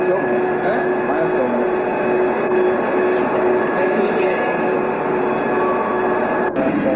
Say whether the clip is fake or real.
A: real